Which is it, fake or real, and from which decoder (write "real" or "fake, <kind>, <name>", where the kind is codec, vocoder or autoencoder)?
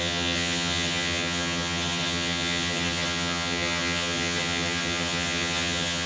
fake, vocoder, HiFi-GAN